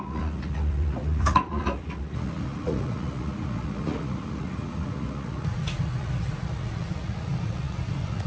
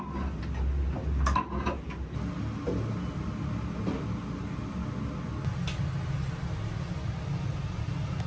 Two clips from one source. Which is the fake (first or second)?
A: first